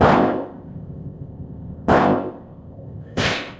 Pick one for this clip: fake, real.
fake